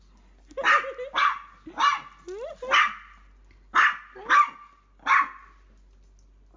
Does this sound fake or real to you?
real